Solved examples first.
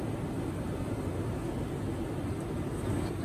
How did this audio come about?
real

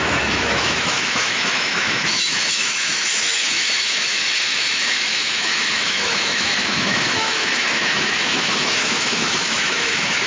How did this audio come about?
fake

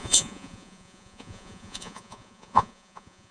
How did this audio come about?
fake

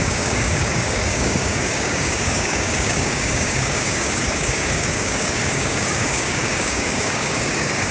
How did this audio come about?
fake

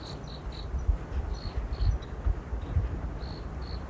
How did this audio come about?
real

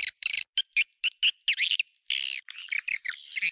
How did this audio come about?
real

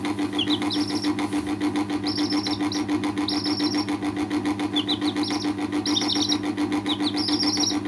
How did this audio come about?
real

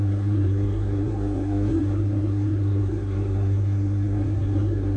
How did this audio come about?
fake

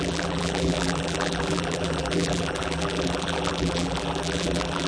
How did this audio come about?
fake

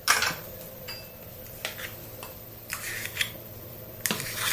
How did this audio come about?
fake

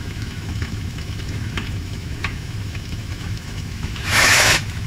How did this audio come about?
fake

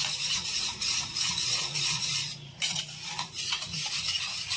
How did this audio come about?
fake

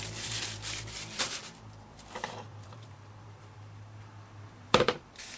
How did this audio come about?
fake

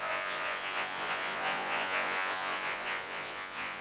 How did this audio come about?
fake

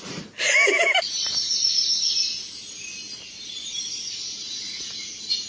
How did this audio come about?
fake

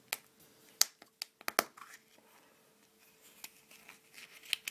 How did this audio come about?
real